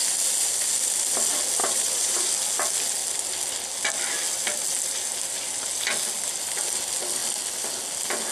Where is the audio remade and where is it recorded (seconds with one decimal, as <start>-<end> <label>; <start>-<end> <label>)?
0.0-1.6 recorded; 1.6-2.3 remade; 2.3-8.3 recorded